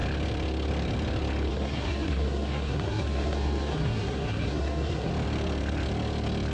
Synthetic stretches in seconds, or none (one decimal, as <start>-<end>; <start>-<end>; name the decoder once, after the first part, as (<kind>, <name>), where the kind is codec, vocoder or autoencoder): 1.5-5.1 (codec, SNAC)